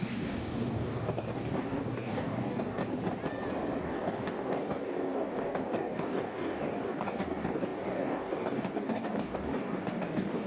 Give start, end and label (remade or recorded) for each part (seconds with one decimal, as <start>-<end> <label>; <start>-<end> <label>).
0.0-2.8 remade; 2.8-3.8 recorded; 3.8-10.5 remade